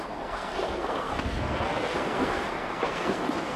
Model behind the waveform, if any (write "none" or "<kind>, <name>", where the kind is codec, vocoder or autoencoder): codec, SNAC